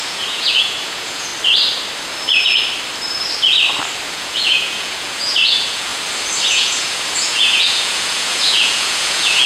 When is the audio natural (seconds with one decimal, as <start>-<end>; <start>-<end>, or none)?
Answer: 1.3-4.1; 5.9-6.5